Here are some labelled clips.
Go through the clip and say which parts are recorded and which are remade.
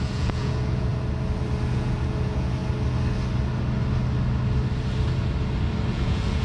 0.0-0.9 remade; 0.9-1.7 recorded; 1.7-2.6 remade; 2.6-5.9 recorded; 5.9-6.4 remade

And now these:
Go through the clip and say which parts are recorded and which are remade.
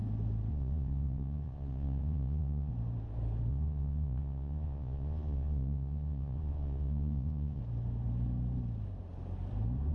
0.0-0.5 recorded; 0.5-2.7 remade; 2.7-3.5 recorded; 3.5-7.6 remade; 7.6-9.9 recorded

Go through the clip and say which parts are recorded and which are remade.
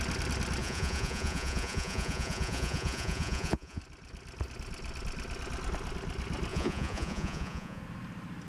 0.0-0.6 recorded; 0.6-3.8 remade; 3.8-6.5 recorded; 6.5-7.8 remade; 7.8-8.5 recorded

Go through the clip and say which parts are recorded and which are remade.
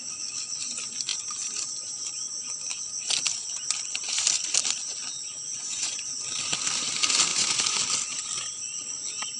0.0-5.5 recorded; 5.5-6.2 remade; 6.2-7.3 recorded; 7.3-7.8 remade; 7.8-9.4 recorded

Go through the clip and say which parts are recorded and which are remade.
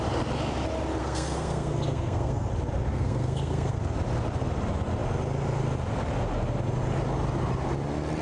0.0-1.0 recorded; 1.0-2.5 remade; 2.5-2.9 recorded; 2.9-3.8 remade; 3.8-8.2 recorded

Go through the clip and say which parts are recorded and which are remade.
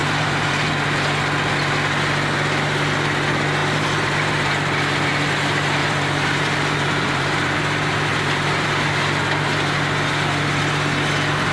0.0-0.7 remade; 0.7-3.6 recorded; 3.6-4.5 remade; 4.5-5.8 recorded; 5.8-7.6 remade; 7.6-8.1 recorded; 8.1-8.7 remade; 8.7-11.5 recorded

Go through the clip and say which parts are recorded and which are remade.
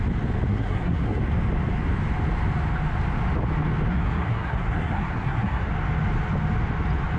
0.0-0.5 recorded; 0.5-1.2 remade; 1.2-3.9 recorded; 3.9-5.7 remade; 5.7-7.2 recorded